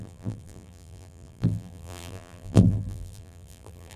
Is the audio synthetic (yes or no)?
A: yes